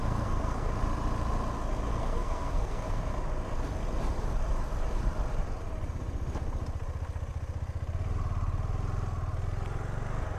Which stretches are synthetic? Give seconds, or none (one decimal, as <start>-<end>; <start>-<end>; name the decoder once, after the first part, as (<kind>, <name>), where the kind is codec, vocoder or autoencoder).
0.0-0.7 (codec, SNAC); 1.9-3.0